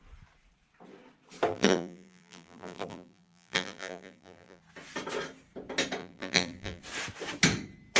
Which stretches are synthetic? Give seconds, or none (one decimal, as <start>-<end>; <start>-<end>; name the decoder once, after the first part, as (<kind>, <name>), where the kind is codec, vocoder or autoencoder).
1.5-4.6 (vocoder, BigVGAN v2); 6.0-6.8